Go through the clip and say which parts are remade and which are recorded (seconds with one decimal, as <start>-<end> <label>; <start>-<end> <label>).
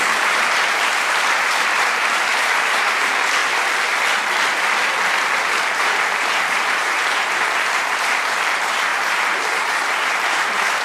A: 0.0-3.4 remade; 3.4-5.4 recorded; 5.4-10.8 remade